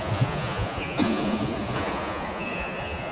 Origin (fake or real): fake